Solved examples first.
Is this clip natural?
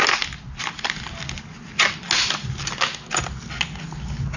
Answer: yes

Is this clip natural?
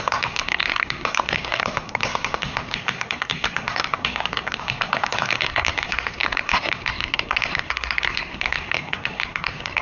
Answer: no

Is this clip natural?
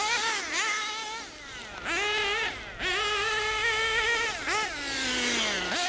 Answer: yes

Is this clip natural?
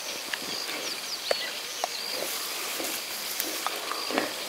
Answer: yes